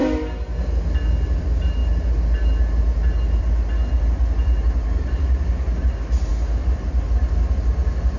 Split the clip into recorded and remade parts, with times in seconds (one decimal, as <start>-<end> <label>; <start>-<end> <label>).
0.0-8.2 recorded